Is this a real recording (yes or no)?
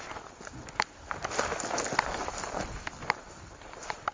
yes